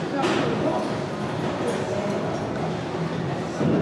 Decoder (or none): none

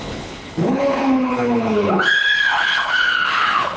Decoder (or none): codec, HILCodec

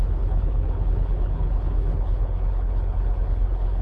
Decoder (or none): codec, HILCodec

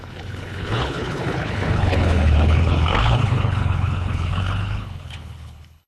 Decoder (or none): codec, HILCodec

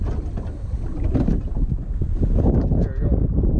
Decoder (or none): none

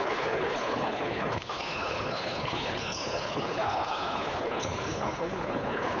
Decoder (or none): codec, HILCodec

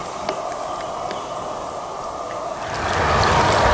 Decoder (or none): none